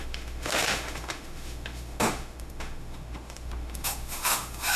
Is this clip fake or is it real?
fake